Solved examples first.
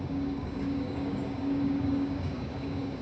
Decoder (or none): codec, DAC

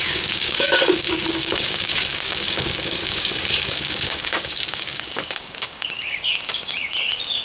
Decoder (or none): codec, DAC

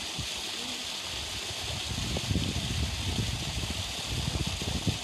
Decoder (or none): none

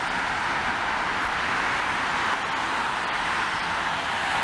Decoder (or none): none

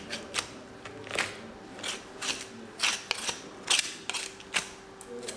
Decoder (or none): none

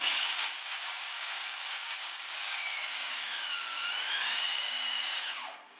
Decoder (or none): codec, DAC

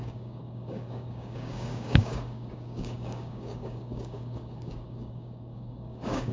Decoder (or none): codec, DAC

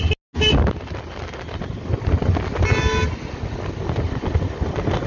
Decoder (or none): none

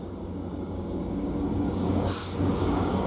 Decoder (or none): codec, DAC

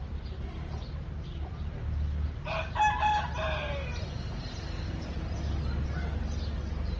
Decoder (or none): none